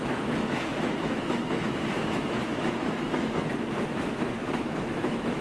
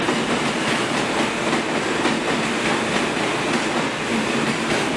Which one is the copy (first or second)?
first